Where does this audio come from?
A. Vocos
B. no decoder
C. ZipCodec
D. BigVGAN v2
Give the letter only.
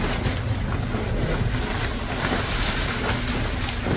B